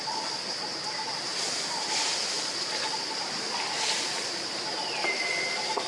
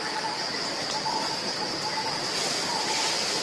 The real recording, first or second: first